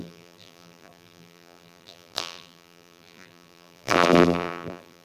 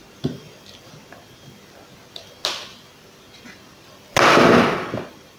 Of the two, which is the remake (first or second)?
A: first